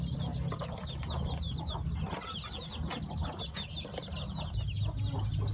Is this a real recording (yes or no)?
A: yes